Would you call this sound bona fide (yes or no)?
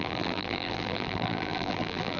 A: no